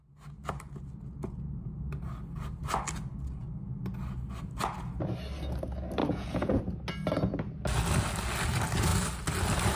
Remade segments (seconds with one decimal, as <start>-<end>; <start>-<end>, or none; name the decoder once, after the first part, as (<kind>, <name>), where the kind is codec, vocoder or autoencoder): 6.0-6.6 (vocoder, Vocos)

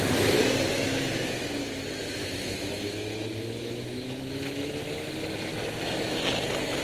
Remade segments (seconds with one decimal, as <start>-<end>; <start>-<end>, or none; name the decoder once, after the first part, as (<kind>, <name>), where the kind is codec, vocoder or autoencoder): 0.7-4.7 (autoencoder, DAC-VAE); 5.5-6.2